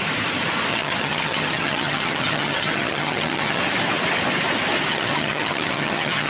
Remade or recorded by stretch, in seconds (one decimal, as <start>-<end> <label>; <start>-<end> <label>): 0.0-0.7 recorded; 0.7-3.6 remade; 3.6-4.9 recorded; 4.9-6.3 remade